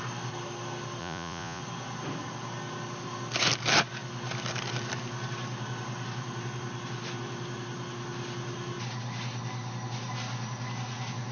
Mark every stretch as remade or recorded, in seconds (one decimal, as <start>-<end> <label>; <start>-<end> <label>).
0.0-1.0 recorded; 1.0-1.6 remade; 1.6-11.3 recorded